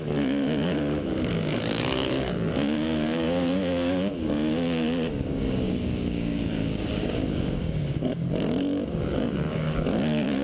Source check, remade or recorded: remade